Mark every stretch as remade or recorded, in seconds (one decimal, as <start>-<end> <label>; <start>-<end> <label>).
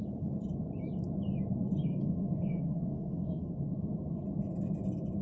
0.0-1.9 recorded; 1.9-3.5 remade; 3.5-5.2 recorded